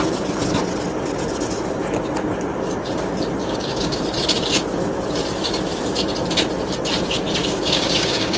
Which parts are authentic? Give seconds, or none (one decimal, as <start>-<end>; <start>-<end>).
0.0-3.4; 4.0-7.4